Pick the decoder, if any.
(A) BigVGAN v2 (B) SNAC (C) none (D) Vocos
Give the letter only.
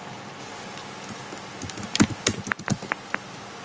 C